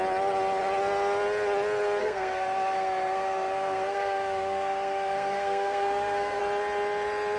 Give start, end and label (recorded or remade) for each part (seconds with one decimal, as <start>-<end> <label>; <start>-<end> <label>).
0.0-2.0 recorded; 2.0-6.4 remade; 6.4-7.4 recorded